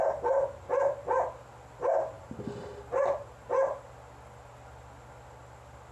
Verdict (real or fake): real